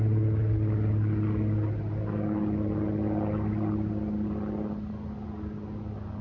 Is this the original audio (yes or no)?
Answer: yes